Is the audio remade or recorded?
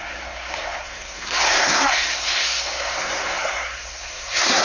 remade